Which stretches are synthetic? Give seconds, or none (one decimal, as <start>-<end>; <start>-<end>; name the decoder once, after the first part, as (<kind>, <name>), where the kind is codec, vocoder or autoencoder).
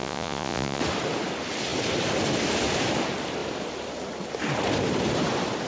0.0-0.8 (vocoder, Vocos)